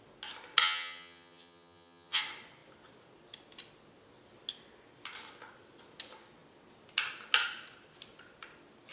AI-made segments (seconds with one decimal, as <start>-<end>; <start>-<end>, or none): 0.6-2.2